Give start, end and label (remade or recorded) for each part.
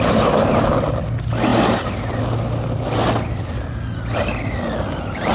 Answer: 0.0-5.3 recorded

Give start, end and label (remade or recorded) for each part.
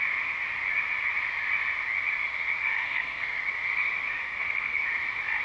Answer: 0.0-2.6 recorded; 2.6-3.4 remade; 3.4-4.2 recorded; 4.2-4.8 remade; 4.8-5.4 recorded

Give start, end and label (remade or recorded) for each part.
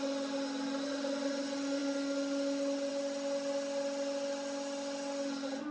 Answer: 0.0-5.7 recorded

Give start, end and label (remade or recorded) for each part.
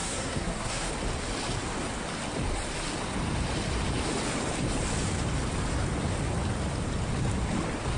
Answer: 0.0-0.9 remade; 0.9-8.0 recorded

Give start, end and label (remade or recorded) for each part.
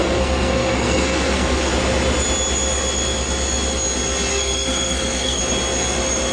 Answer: 0.0-1.7 remade; 1.7-4.3 recorded; 4.3-5.4 remade; 5.4-6.3 recorded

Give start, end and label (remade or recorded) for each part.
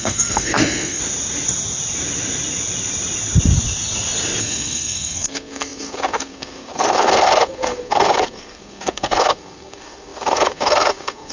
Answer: 0.0-1.0 remade; 1.0-4.4 recorded; 4.4-11.3 remade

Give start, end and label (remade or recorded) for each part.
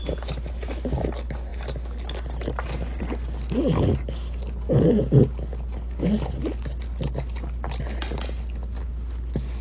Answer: 0.0-9.6 recorded